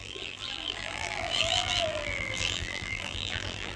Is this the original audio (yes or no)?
no